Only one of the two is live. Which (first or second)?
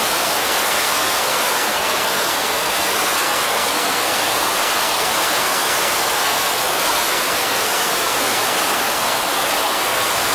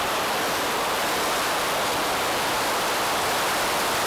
second